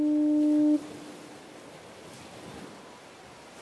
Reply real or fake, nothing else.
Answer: real